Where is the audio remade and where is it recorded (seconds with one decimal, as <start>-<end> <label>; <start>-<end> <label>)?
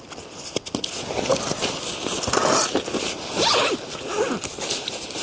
0.0-5.2 recorded